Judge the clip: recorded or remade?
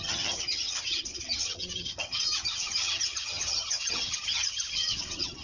remade